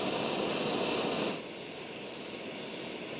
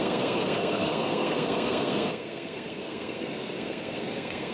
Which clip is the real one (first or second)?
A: first